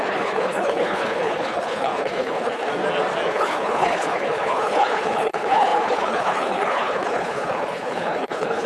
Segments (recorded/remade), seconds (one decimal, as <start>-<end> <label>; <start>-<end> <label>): 0.0-2.7 remade; 2.7-3.3 recorded; 3.3-8.7 remade

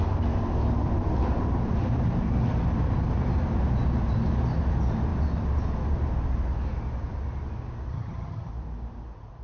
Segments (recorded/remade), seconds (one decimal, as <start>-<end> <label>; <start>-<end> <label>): 0.0-7.9 recorded; 7.9-8.5 remade; 8.5-9.4 recorded

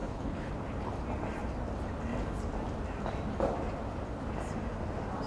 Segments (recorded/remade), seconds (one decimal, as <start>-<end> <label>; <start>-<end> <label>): 0.0-0.5 remade; 0.5-5.3 recorded

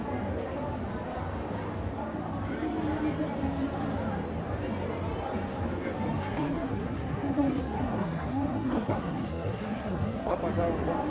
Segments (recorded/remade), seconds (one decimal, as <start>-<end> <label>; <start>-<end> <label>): 0.0-6.2 recorded; 6.2-10.4 remade; 10.4-11.1 recorded

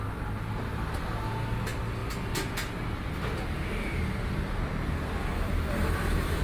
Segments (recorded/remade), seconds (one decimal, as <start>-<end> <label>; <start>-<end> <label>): 0.0-5.3 recorded; 5.3-6.4 remade

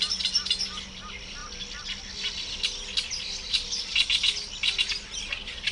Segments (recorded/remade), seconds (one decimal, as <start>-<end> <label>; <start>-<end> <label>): 0.0-5.7 recorded